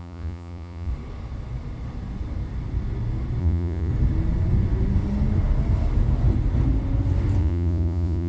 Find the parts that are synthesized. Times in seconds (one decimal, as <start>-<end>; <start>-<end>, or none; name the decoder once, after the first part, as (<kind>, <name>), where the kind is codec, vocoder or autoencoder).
0.0-0.9 (vocoder, Vocos); 3.4-3.9; 7.4-8.3